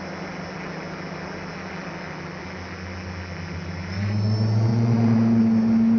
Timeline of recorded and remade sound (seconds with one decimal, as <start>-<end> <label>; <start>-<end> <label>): 0.0-4.7 recorded; 4.7-5.4 remade; 5.4-6.0 recorded